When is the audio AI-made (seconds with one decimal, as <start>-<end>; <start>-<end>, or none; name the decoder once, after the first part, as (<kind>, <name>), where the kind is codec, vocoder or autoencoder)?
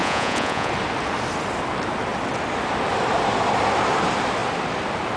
0.0-0.7 (vocoder, Vocos)